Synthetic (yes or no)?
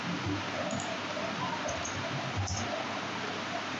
no